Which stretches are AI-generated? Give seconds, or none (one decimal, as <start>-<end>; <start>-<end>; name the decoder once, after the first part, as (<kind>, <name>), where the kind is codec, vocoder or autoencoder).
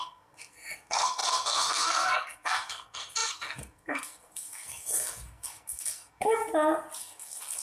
0.0-6.4 (codec, SNAC); 7.0-7.6